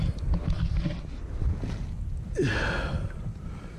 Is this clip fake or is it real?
real